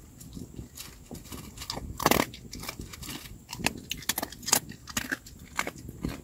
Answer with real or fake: real